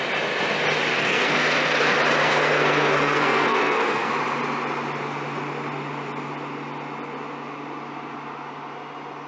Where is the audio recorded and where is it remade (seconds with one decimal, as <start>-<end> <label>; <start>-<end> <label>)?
0.0-0.9 recorded; 0.9-1.8 remade; 1.8-2.2 recorded; 2.2-4.1 remade; 4.1-9.3 recorded